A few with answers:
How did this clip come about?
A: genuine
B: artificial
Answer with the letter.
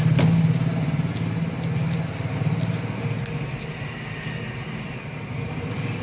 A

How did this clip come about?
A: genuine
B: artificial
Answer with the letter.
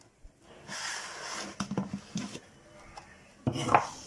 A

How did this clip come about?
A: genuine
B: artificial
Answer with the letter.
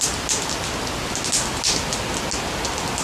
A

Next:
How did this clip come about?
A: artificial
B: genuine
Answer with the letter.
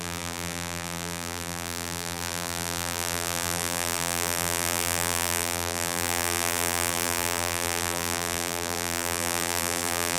A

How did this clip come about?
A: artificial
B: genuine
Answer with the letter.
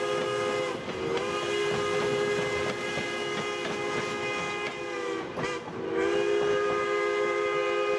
B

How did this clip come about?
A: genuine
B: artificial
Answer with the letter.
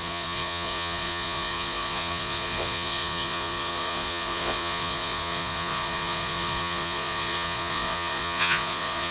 B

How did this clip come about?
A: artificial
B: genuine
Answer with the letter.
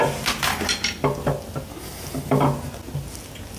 B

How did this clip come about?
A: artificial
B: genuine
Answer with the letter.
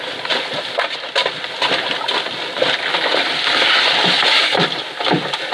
B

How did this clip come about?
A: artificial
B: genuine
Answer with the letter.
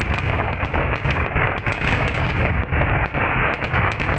A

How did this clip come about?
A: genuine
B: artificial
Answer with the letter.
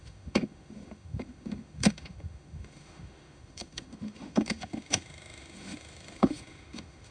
B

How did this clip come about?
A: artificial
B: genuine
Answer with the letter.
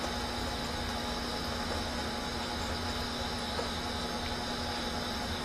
B